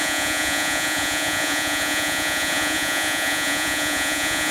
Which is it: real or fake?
fake